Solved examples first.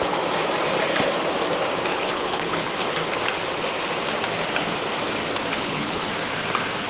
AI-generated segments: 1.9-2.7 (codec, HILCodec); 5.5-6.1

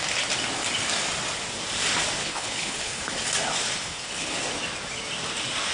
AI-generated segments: 2.2-3.0 (codec, HILCodec); 3.8-4.4

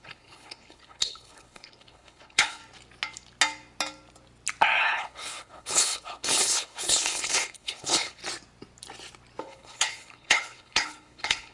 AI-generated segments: 0.0-2.6 (codec, HILCodec); 4.8-8.2; 9.4-11.5

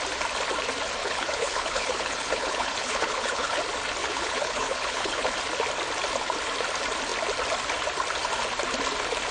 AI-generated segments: 1.0-3.6 (codec, HILCodec); 4.0-5.3

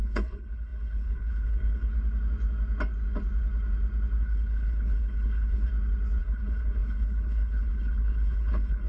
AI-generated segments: 0.0-1.9 (codec, HILCodec); 4.2-5.7; 6.2-8.9

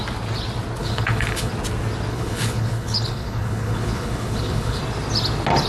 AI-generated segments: 0.8-1.5 (codec, HILCodec); 2.1-4.8